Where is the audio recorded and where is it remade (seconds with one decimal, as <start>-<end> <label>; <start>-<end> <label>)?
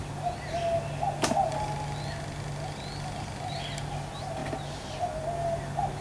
0.0-6.0 recorded